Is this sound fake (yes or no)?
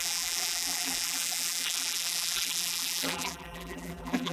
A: yes